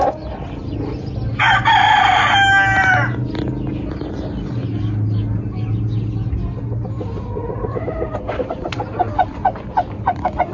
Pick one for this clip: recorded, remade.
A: recorded